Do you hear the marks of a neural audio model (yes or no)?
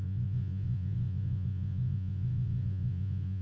yes